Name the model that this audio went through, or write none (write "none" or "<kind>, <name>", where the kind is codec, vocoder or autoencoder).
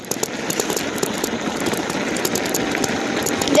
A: none